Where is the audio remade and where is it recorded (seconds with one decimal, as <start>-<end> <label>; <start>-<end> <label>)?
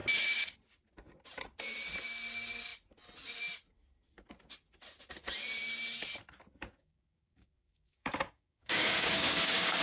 0.0-6.7 recorded; 6.7-9.8 remade